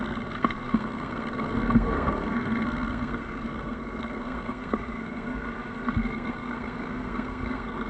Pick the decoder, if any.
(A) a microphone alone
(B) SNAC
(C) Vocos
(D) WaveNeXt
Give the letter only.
B